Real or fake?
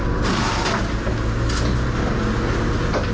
real